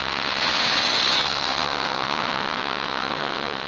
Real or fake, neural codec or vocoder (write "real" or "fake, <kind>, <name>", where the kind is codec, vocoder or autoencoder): fake, vocoder, WaveNeXt